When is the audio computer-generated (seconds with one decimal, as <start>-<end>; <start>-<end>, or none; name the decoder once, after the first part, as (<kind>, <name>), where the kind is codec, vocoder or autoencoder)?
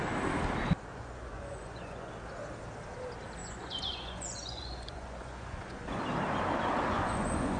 0.9-2.1 (vocoder, Vocos); 3.4-6.0; 6.9-7.6